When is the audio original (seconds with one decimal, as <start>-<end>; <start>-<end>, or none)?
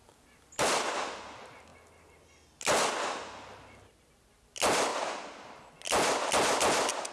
0.0-7.1